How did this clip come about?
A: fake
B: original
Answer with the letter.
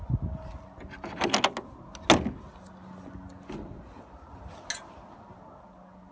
B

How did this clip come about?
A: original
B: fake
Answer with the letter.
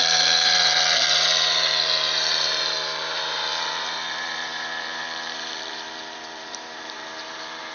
B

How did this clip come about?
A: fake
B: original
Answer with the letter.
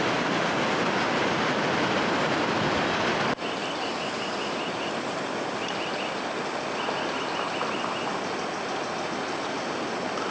B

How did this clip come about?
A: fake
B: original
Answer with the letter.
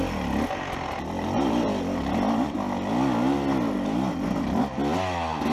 B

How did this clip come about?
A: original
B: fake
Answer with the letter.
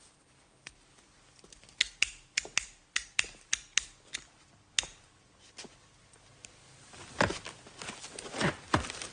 A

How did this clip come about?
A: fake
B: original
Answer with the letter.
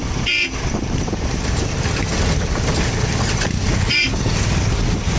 B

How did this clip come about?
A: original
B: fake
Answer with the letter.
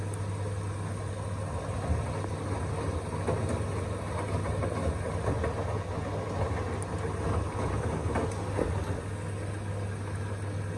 A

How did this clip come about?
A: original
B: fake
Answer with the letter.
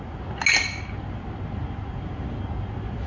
A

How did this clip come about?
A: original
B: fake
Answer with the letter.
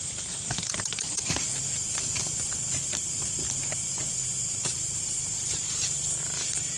B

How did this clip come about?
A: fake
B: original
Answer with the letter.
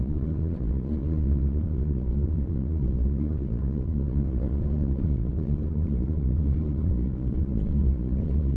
A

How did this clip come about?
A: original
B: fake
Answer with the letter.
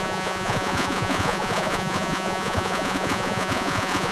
B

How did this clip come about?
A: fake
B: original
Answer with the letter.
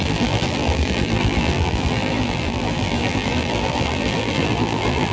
A